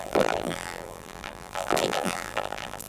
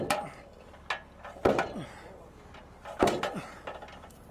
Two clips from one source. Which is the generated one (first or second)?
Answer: first